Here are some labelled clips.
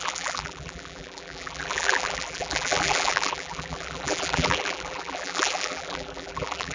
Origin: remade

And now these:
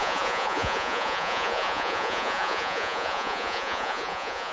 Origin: remade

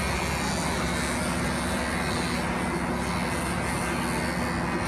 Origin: recorded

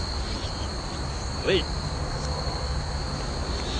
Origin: recorded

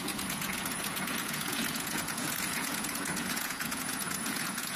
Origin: remade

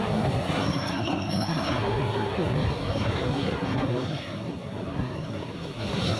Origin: remade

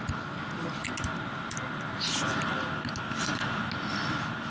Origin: recorded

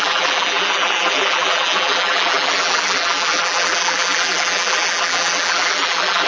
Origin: remade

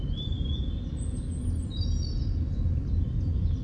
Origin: recorded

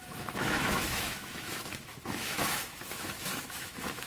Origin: remade